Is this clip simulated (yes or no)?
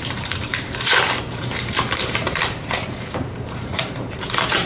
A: yes